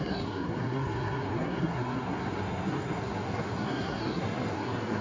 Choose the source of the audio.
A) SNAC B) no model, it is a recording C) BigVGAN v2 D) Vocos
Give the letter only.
A